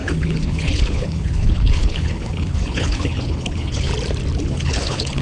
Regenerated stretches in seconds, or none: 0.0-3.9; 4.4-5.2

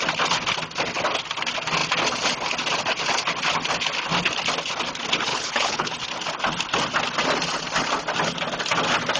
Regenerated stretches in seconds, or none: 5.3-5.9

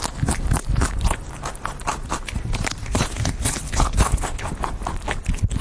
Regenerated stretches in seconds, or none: 2.8-4.5

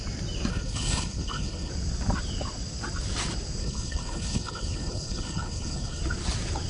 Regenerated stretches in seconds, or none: 0.5-1.7; 3.6-6.0

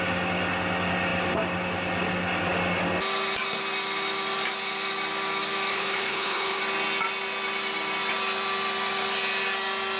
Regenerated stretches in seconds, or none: 5.7-6.6

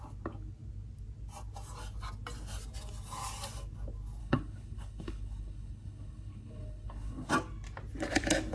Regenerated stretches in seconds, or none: 4.2-7.3